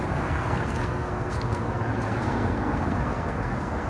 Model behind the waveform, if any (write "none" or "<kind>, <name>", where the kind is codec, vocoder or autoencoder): codec, SNAC